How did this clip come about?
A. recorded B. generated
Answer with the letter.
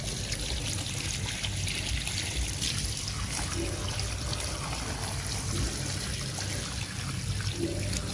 A